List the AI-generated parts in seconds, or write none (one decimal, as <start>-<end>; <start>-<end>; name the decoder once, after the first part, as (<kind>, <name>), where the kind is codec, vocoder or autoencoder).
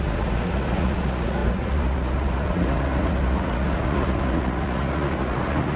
0.0-5.8 (vocoder, Vocos)